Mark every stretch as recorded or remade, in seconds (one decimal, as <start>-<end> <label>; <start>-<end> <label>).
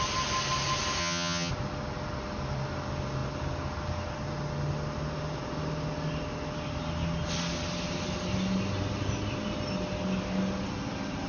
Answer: 0.0-1.0 recorded; 1.0-1.5 remade; 1.5-11.3 recorded